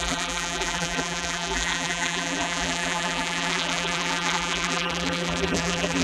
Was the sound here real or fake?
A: fake